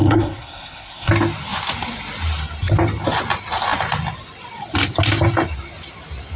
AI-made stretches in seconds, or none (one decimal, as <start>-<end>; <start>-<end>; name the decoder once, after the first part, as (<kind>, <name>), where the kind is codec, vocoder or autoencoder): 0.0-1.1 (codec, SNAC)